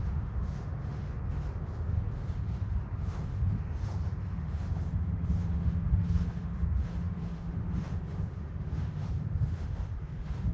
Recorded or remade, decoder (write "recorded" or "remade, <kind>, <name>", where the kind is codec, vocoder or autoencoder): remade, autoencoder, DAC-VAE